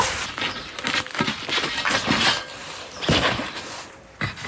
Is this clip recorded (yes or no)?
yes